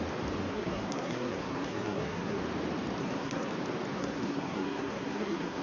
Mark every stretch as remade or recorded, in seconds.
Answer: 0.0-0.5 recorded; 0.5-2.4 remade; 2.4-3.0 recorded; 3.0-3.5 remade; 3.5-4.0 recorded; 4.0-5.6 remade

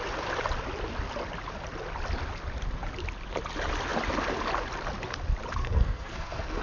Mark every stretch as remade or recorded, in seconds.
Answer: 0.0-5.6 recorded; 5.6-6.6 remade

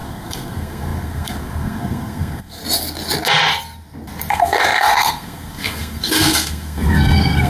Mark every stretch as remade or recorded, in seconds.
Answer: 0.0-2.6 remade; 2.6-4.3 recorded; 4.3-7.5 remade

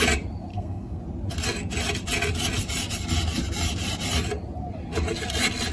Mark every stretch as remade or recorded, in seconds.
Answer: 0.0-0.5 recorded; 0.5-1.0 remade; 1.0-5.7 recorded